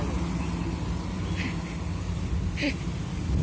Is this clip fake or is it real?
real